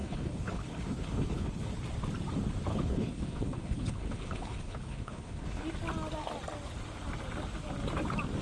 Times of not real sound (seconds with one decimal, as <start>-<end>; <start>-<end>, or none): 0.0-1.7; 2.7-5.6